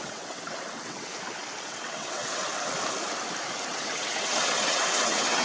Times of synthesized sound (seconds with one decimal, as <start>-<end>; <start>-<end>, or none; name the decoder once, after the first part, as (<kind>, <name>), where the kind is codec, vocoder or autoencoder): 0.0-1.1 (vocoder, WaveNeXt); 1.6-2.4; 3.7-5.4